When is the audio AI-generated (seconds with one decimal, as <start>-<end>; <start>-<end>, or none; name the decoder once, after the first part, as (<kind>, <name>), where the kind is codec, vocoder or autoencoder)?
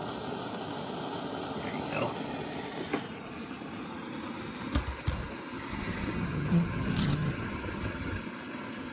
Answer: 5.7-8.2 (vocoder, HiFi-GAN)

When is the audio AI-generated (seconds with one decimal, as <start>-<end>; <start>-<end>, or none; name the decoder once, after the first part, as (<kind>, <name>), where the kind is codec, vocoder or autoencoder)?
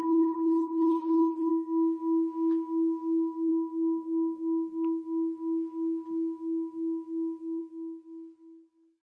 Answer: 0.0-1.5 (codec, HILCodec)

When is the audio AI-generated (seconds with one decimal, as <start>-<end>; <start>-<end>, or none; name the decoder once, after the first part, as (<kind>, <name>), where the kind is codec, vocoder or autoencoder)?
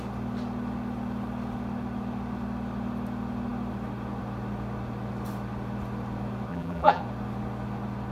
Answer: 6.5-7.0 (vocoder, BigVGAN v2)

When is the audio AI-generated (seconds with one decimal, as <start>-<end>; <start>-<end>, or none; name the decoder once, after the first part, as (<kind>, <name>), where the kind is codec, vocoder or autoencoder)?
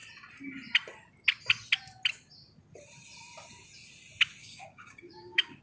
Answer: 4.4-5.6 (codec, DAC)